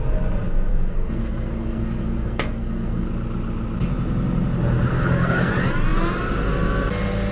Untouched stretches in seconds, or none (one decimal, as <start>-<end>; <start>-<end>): 0.0-0.7; 3.1-4.9; 5.5-7.3